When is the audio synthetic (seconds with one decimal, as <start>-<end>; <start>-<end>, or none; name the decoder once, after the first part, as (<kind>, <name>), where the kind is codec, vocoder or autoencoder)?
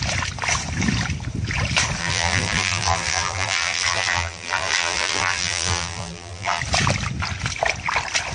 2.0-6.6 (vocoder, BigVGAN v2)